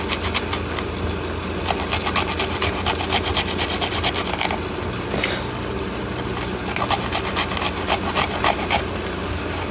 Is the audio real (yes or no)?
yes